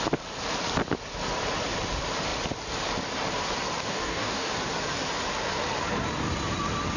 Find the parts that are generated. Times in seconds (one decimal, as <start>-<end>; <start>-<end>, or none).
3.9-4.5